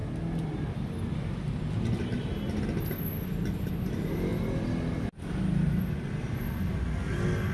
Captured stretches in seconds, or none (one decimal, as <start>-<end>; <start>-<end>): 0.0-7.5